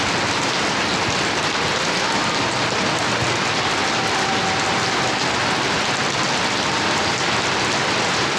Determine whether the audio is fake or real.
real